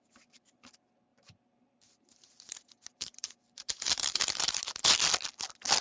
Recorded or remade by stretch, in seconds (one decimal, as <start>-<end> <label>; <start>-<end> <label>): 0.0-1.1 recorded; 1.1-4.6 remade; 4.6-5.8 recorded